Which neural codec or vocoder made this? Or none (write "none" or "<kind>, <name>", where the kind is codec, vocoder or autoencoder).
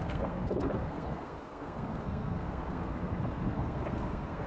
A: codec, SNAC